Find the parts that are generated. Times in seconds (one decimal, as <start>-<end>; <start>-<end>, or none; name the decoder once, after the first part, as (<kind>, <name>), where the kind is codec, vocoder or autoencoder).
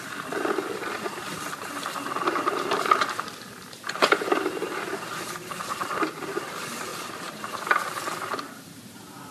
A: 0.0-4.6 (vocoder, BigVGAN v2); 5.3-9.3